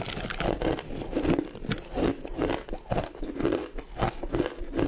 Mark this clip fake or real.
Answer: real